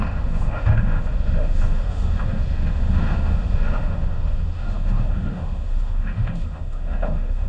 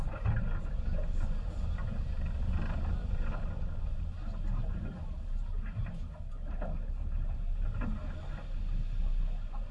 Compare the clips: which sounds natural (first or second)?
second